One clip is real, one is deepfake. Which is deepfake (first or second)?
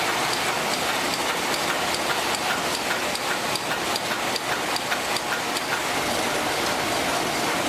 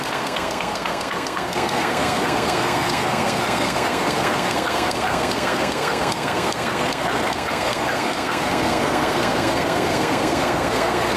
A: second